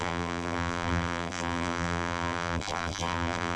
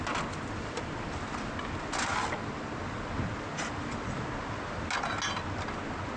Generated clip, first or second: first